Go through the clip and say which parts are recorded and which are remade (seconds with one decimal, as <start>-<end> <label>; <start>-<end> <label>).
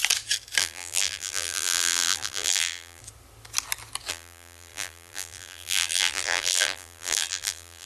0.0-0.6 recorded; 0.6-3.0 remade; 3.0-4.1 recorded; 4.1-7.9 remade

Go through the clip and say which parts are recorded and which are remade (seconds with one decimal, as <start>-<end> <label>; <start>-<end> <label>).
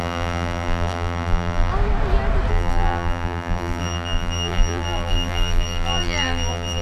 0.0-1.7 remade; 1.7-2.5 recorded; 2.5-6.8 remade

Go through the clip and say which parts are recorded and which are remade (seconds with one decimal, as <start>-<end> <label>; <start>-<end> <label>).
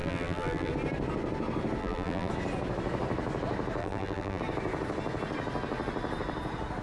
0.0-0.7 remade; 0.7-1.8 recorded; 1.8-2.3 remade; 2.3-3.8 recorded; 3.8-4.4 remade; 4.4-6.8 recorded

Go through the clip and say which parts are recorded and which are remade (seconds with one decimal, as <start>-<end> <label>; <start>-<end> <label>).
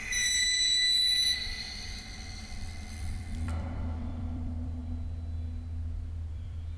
0.0-4.8 remade; 4.8-6.3 recorded; 6.3-6.8 remade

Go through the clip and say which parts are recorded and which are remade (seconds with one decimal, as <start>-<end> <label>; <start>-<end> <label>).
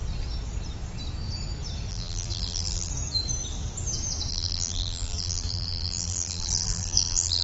0.0-1.9 recorded; 1.9-2.9 remade; 2.9-4.3 recorded; 4.3-7.4 remade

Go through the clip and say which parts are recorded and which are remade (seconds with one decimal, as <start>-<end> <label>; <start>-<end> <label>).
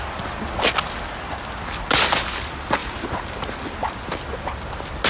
0.0-2.8 recorded; 2.8-4.0 remade; 4.0-5.1 recorded